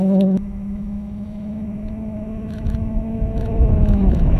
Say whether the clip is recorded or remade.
remade